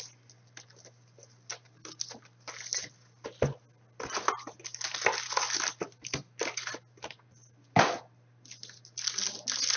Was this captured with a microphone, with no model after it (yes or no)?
yes